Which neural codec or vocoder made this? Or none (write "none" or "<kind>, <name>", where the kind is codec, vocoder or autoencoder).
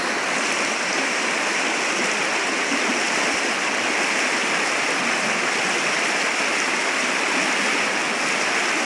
none